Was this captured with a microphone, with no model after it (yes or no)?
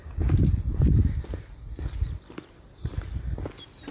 yes